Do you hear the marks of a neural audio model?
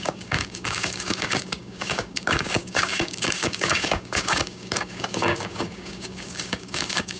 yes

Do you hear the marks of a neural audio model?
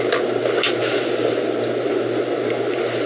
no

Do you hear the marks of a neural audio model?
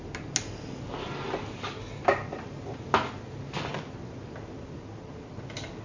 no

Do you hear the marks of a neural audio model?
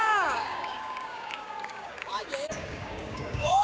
yes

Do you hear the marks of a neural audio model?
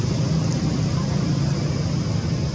no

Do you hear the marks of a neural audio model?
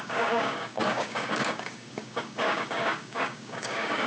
yes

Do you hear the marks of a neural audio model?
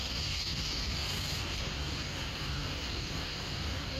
yes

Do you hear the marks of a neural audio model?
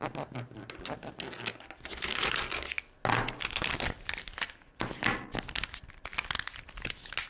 no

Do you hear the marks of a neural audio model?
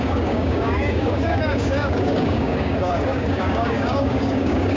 yes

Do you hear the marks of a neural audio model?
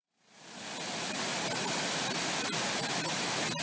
no